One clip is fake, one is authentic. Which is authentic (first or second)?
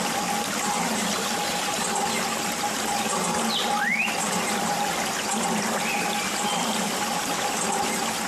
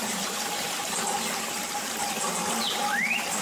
first